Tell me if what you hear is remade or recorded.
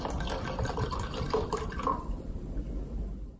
recorded